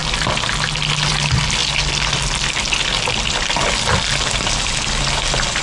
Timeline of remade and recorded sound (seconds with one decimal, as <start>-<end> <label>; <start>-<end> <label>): 0.0-5.6 recorded